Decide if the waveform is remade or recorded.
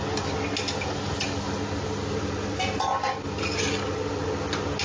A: recorded